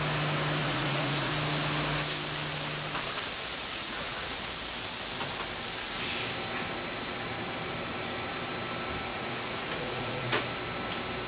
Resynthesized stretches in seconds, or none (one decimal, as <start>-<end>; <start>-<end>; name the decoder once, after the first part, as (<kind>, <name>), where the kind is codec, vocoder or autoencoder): 0.6-1.3 (vocoder, Vocos); 3.5-4.4; 9.1-10.4